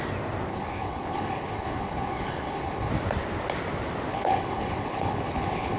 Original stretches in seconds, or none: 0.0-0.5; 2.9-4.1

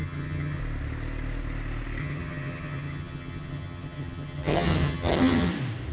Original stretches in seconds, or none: 0.6-2.0; 5.5-5.9

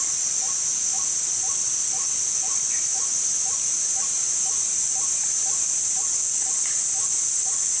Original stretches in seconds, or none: 0.0-2.5; 6.2-7.8

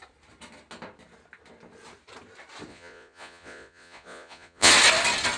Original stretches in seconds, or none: 0.0-2.7; 4.7-5.4

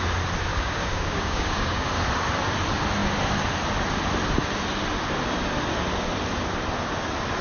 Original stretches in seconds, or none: 0.0-0.5; 1.9-7.4

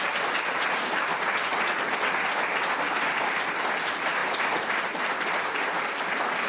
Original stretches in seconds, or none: 0.0-6.5

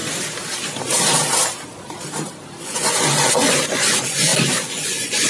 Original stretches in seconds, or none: 0.0-2.6